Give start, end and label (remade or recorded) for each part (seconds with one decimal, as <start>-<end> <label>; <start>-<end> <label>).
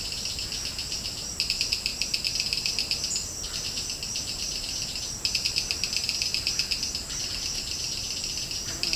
0.0-9.0 recorded